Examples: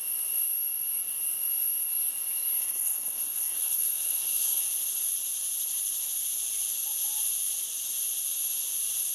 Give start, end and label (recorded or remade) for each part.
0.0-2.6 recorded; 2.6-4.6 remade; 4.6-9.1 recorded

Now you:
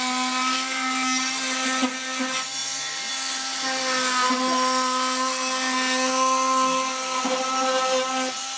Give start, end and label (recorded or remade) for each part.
0.0-8.6 recorded

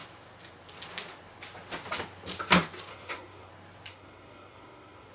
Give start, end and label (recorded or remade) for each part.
0.0-2.9 recorded; 2.9-3.5 remade; 3.5-3.9 recorded; 3.9-5.1 remade

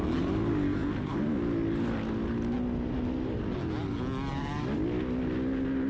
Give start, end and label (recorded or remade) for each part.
0.0-5.9 recorded

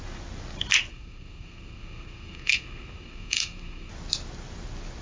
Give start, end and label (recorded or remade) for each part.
0.0-0.9 recorded; 0.9-3.9 remade; 3.9-5.0 recorded

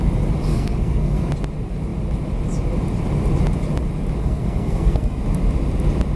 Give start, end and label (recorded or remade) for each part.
0.0-0.5 recorded; 0.5-1.3 remade; 1.3-4.2 recorded; 4.2-5.2 remade; 5.2-6.2 recorded